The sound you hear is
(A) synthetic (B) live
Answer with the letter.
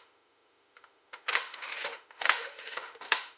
A